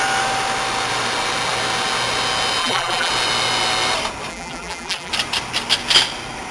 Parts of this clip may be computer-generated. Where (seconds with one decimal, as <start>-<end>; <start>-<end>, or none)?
2.6-3.1; 4.3-5.1